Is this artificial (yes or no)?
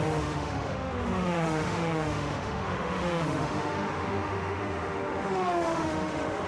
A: yes